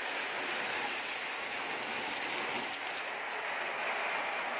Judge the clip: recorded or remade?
recorded